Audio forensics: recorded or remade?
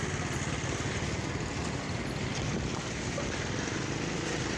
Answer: recorded